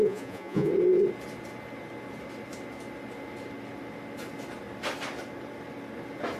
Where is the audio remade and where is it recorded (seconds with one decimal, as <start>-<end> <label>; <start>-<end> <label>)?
0.0-0.7 remade; 0.7-6.4 recorded